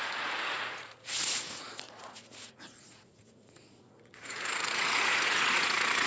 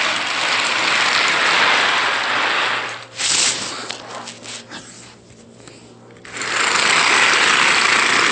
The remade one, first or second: first